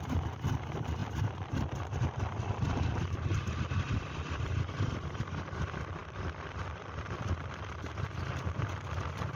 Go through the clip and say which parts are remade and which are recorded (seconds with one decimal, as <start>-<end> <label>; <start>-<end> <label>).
0.0-9.4 remade